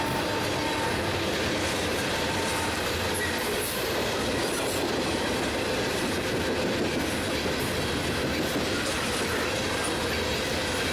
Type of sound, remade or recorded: recorded